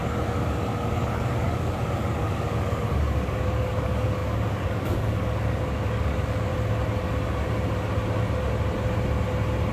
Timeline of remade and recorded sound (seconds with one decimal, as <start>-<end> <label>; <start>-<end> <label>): 0.0-6.5 remade; 6.5-9.7 recorded